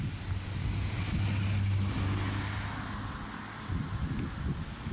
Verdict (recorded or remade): recorded